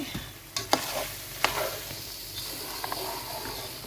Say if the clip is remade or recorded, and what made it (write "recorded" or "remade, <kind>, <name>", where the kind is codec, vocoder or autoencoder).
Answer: recorded